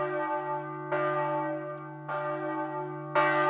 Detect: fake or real real